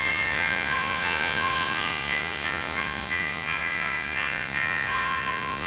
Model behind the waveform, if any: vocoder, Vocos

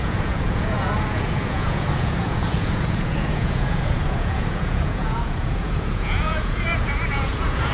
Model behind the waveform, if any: vocoder, Vocos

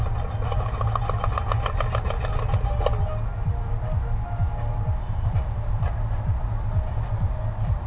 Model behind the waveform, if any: none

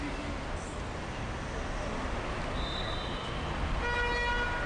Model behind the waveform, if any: none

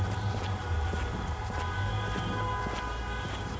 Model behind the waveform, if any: none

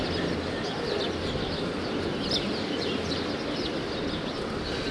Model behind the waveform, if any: none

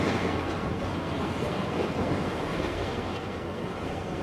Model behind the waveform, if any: codec, SNAC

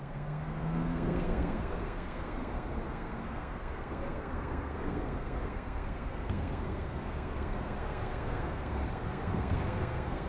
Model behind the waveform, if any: codec, SNAC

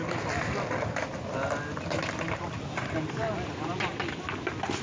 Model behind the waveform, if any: none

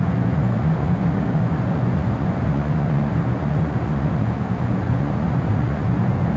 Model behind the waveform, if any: vocoder, Vocos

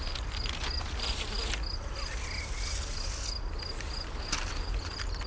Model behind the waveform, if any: none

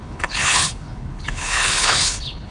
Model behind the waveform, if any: codec, HILCodec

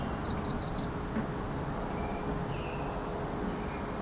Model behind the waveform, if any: none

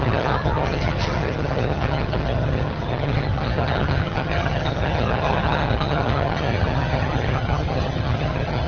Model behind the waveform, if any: vocoder, HiFi-GAN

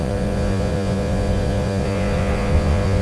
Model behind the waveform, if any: vocoder, Vocos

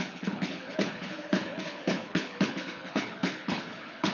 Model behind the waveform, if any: codec, HILCodec